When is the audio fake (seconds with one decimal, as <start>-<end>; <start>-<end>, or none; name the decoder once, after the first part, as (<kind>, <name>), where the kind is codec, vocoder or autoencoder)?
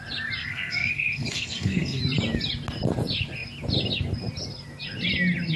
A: 0.4-2.0 (codec, SNAC)